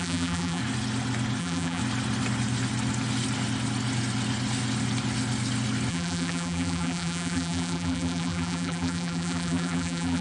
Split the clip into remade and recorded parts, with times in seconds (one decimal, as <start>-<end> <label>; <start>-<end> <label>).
0.0-0.6 remade; 0.6-1.4 recorded; 1.4-1.8 remade; 1.8-5.9 recorded; 5.9-10.2 remade